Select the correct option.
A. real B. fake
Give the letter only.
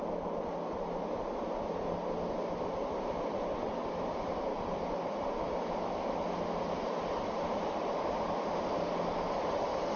A